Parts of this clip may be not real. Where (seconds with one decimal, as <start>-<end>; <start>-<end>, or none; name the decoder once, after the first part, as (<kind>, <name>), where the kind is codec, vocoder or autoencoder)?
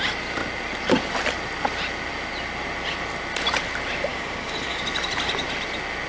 4.1-4.8 (codec, DAC)